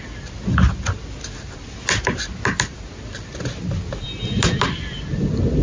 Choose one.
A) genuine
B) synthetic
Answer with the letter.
A